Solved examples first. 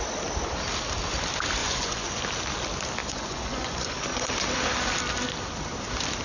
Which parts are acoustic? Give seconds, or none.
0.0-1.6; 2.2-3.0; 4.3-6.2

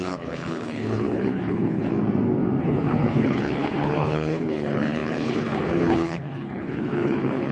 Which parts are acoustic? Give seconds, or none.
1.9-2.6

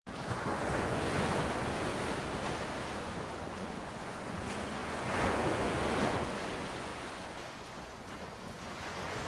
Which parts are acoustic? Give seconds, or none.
1.9-3.0